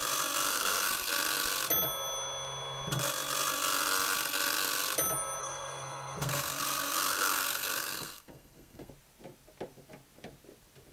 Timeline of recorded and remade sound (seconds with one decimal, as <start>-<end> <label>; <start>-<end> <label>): 0.0-0.5 recorded; 0.5-1.1 remade; 1.1-5.4 recorded; 5.4-8.9 remade; 8.9-10.9 recorded